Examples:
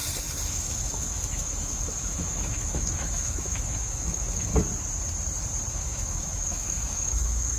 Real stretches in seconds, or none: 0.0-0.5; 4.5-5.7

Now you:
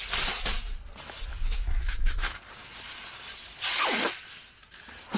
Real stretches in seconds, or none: 0.0-1.3; 2.4-5.2